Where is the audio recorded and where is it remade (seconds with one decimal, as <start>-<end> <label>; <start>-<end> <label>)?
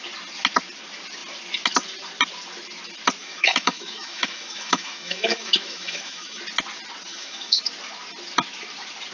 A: 0.0-3.2 recorded; 3.2-6.4 remade; 6.4-7.1 recorded; 7.1-7.6 remade; 7.6-9.1 recorded